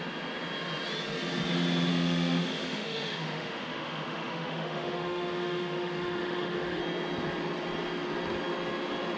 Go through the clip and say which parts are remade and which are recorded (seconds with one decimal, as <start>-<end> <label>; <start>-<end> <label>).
0.0-1.9 recorded; 1.9-6.8 remade; 6.8-9.2 recorded